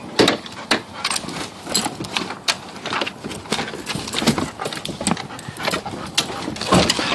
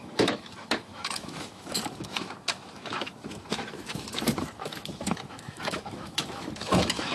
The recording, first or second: first